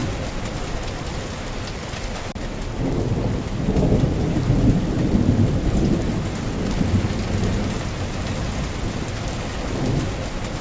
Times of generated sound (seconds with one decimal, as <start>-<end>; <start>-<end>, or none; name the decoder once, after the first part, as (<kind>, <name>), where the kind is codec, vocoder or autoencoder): none